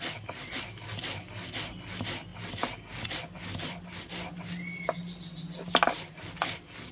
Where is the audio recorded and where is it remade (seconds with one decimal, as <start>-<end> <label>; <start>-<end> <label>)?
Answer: 0.0-6.9 recorded